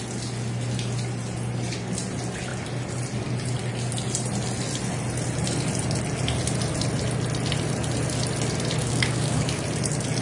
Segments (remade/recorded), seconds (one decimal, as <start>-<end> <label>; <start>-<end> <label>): 0.0-8.8 recorded; 8.8-9.6 remade; 9.6-10.2 recorded